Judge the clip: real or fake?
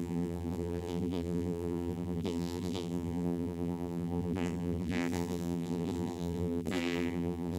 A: fake